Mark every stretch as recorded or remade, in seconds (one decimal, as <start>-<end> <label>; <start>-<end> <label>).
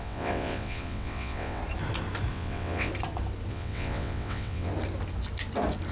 0.0-1.6 remade; 1.6-2.3 recorded; 2.3-2.9 remade; 2.9-3.5 recorded; 3.5-4.7 remade; 4.7-5.9 recorded